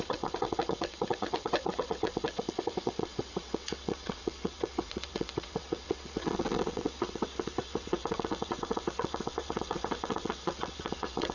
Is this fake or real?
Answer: fake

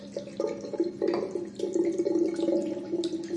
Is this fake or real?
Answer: real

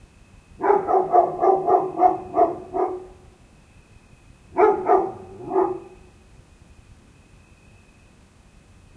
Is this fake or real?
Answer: real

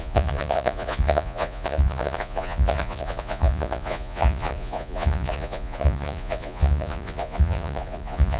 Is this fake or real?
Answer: fake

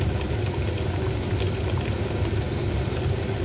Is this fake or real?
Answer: real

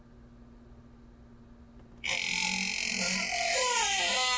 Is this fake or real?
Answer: real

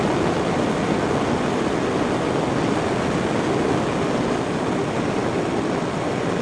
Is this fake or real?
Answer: real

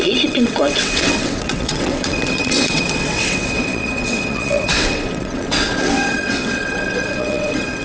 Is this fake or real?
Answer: fake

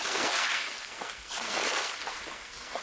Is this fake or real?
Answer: fake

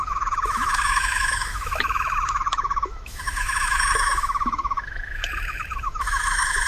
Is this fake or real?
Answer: fake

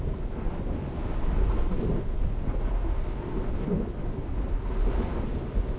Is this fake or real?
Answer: real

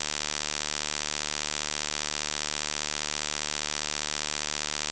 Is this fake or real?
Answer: real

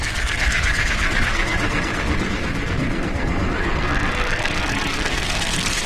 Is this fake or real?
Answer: fake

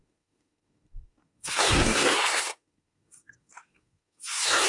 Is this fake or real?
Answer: fake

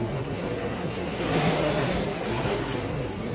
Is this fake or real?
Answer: fake